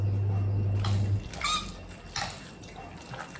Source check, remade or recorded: recorded